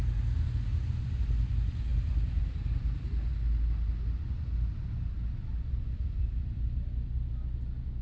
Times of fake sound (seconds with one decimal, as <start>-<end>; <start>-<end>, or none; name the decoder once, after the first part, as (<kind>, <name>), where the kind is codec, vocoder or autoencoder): 0.7-1.5 (vocoder, BigVGAN v2); 5.4-7.6